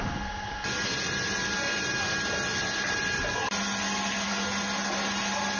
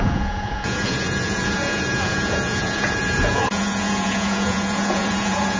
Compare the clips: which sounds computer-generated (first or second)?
second